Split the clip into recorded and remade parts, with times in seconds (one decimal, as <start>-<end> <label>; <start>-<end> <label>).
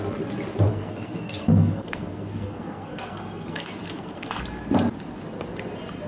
0.0-0.7 recorded; 0.7-4.4 remade; 4.4-6.1 recorded